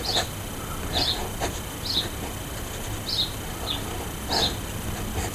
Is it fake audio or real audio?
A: real